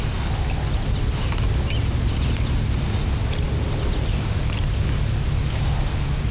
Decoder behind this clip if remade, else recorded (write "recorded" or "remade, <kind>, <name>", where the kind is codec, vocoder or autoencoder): recorded